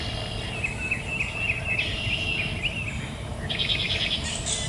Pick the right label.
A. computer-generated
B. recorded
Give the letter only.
B